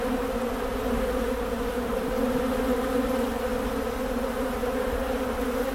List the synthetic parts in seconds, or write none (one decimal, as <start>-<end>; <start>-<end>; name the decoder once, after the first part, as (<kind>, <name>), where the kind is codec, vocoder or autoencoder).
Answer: none

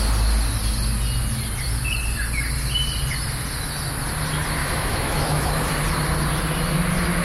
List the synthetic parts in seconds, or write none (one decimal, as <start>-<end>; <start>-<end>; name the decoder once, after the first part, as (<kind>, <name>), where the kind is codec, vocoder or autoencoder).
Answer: 4.6-5.7 (autoencoder, DAC-VAE)